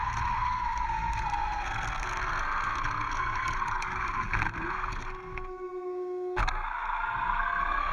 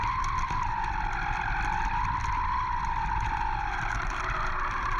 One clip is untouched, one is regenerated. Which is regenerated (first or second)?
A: first